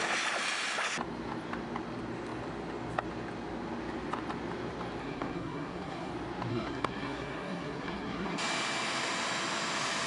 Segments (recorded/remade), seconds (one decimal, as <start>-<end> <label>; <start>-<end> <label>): 0.0-5.0 recorded; 5.0-6.1 remade; 6.1-6.5 recorded; 6.5-8.4 remade; 8.4-10.1 recorded